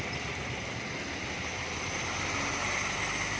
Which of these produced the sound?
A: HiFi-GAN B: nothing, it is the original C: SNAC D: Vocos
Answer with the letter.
B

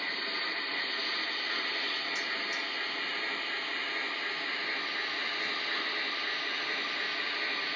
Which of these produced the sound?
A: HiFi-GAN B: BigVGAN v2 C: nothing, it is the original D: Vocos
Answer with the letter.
C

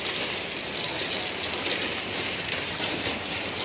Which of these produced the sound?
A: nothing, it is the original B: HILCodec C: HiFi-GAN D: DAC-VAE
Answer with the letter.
A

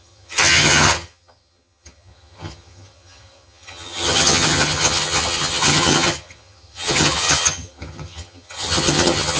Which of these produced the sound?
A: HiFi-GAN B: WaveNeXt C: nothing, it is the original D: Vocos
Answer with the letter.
A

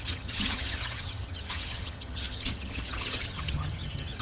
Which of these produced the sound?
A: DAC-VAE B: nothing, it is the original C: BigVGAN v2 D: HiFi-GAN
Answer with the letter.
D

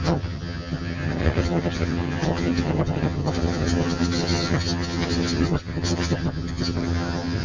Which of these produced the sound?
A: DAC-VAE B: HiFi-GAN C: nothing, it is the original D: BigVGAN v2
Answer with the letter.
B